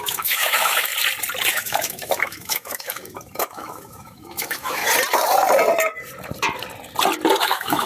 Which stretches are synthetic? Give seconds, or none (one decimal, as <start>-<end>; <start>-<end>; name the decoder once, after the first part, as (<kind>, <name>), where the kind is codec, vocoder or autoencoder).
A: 0.0-0.9 (autoencoder, DAC-VAE); 1.5-4.8; 7.4-7.9